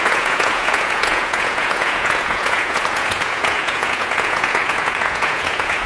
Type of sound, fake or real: fake